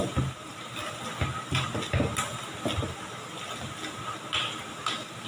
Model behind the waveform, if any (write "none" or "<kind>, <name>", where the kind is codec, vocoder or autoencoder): none